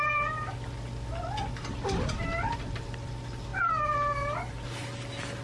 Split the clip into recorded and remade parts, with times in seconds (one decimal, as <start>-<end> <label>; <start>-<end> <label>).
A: 0.0-3.5 remade; 3.5-4.2 recorded; 4.2-5.4 remade